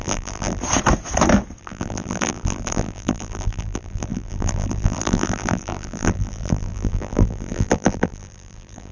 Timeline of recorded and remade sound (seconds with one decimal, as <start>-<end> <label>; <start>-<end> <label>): 0.0-0.6 remade; 0.6-1.6 recorded; 1.6-8.9 remade